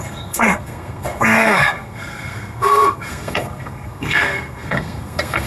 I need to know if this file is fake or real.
fake